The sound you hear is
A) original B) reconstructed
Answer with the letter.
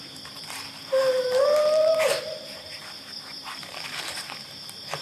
B